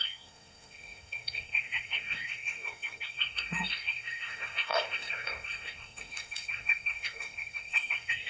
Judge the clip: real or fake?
fake